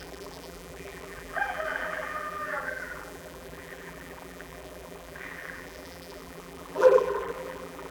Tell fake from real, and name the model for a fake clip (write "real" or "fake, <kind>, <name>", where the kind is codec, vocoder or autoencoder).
fake, vocoder, BigVGAN v2